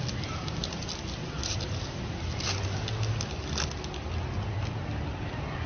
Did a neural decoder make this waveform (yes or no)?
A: no